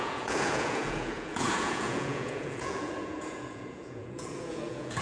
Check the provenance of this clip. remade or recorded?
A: remade